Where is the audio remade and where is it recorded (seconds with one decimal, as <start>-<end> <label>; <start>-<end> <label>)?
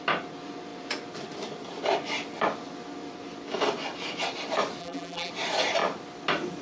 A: 0.0-4.8 recorded; 4.8-5.3 remade; 5.3-6.6 recorded